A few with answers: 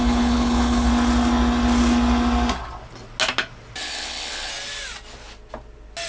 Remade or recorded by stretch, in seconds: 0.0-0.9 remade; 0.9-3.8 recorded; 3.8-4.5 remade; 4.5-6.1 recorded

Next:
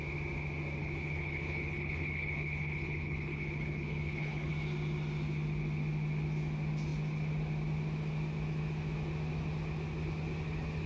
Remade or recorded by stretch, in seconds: 0.0-0.8 recorded; 0.8-4.5 remade; 4.5-10.9 recorded

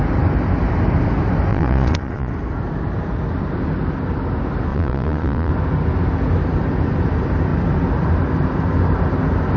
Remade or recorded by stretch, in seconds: 0.0-1.5 recorded; 1.5-2.3 remade; 2.3-4.7 recorded; 4.7-5.5 remade; 5.5-9.6 recorded

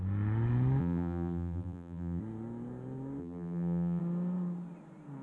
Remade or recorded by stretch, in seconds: 0.0-0.8 recorded; 0.8-2.2 remade; 2.2-3.2 recorded; 3.2-4.0 remade; 4.0-5.2 recorded

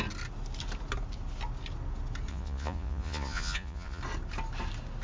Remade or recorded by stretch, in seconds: 0.0-2.3 recorded; 2.3-4.0 remade; 4.0-5.0 recorded